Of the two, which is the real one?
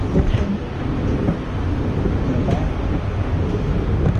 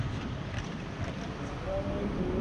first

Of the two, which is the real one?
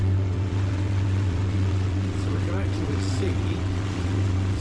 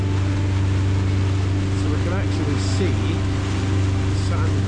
second